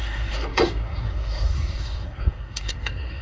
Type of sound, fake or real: fake